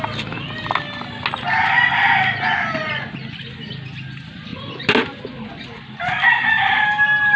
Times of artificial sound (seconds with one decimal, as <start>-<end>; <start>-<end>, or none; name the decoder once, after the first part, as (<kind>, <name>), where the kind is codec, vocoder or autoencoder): none